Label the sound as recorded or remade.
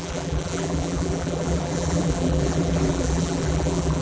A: remade